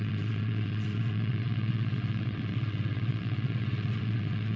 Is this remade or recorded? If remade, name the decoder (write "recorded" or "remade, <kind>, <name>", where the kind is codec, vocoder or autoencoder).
remade, vocoder, WaveNeXt